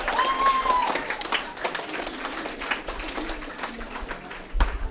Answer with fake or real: real